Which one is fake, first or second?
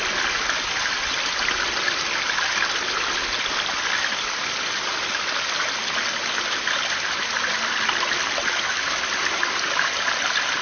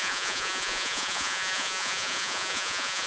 second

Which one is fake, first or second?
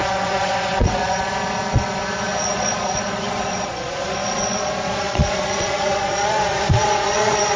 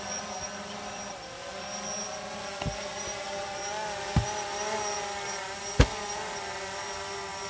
first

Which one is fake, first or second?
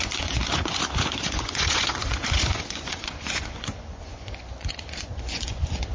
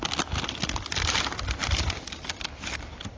first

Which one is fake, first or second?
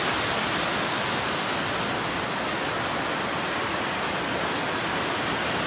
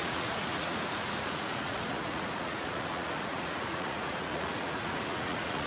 second